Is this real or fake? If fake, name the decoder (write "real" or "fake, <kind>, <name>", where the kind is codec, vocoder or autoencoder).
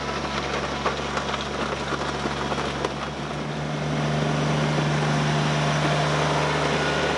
real